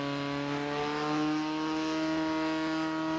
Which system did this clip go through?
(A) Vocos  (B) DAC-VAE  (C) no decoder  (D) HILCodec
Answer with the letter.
C